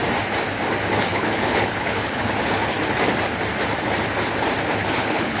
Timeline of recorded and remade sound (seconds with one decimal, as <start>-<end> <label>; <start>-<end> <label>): 0.0-1.1 recorded; 1.1-2.3 remade; 2.3-4.8 recorded; 4.8-5.4 remade

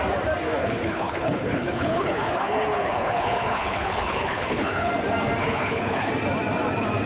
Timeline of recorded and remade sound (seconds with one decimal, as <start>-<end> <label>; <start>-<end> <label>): 0.0-0.6 recorded; 0.6-4.9 remade; 4.9-5.4 recorded; 5.4-6.1 remade; 6.1-7.1 recorded

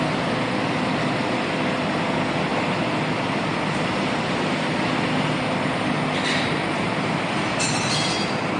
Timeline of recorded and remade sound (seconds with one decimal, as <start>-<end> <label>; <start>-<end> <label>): 0.0-8.6 recorded

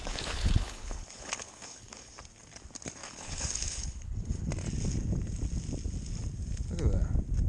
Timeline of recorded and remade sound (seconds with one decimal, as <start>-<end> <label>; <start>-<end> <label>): 0.0-2.1 remade; 2.1-3.0 recorded; 3.0-4.5 remade; 4.5-7.5 recorded

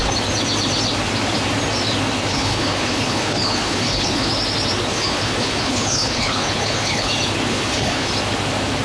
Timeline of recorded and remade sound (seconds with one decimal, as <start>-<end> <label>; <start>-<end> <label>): 0.0-2.3 recorded; 2.3-4.3 remade; 4.3-4.9 recorded; 4.9-7.1 remade; 7.1-7.5 recorded; 7.5-8.1 remade; 8.1-8.8 recorded

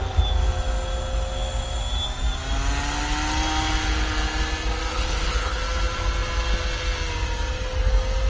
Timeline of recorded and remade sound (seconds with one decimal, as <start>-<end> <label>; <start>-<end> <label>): 0.0-4.9 recorded; 4.9-5.6 remade; 5.6-8.3 recorded

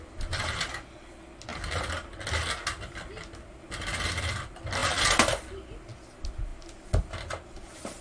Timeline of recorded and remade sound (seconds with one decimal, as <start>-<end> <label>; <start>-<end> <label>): 0.0-8.0 recorded